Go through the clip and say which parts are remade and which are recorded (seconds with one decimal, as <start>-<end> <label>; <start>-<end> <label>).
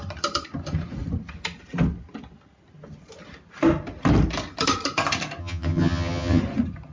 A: 0.0-5.4 recorded; 5.4-6.4 remade; 6.4-6.9 recorded